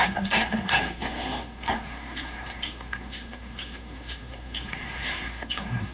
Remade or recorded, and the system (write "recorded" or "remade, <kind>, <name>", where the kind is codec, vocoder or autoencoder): remade, codec, SNAC